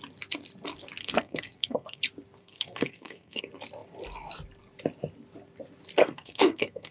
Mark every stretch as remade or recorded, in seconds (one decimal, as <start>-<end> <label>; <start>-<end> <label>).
0.0-1.0 recorded; 1.0-2.0 remade; 2.0-2.4 recorded; 2.4-3.4 remade; 3.4-6.0 recorded; 6.0-6.9 remade